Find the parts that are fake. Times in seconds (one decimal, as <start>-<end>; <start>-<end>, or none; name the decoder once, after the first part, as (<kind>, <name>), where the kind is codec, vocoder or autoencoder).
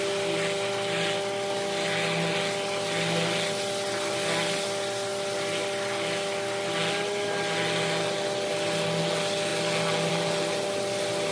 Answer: none